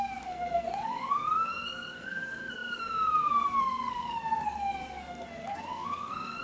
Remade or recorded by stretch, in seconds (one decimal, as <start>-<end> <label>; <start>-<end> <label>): 0.0-6.4 remade